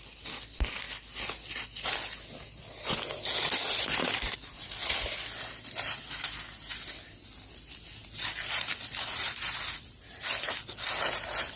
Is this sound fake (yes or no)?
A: no